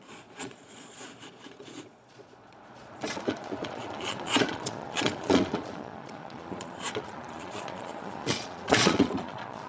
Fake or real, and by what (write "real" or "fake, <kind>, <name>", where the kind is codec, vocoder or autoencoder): fake, vocoder, Vocos